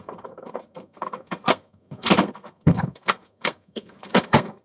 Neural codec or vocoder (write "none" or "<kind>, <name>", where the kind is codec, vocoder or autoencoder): codec, SNAC